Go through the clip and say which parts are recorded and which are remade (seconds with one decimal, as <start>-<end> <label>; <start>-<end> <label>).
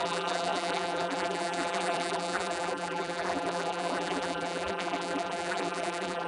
0.0-6.3 remade